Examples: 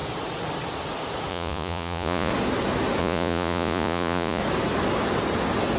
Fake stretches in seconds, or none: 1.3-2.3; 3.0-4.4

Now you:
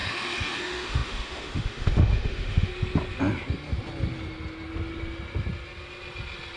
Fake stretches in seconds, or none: 0.0-2.7

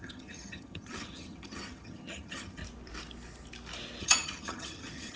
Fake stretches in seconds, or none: 0.0-2.6; 4.0-5.2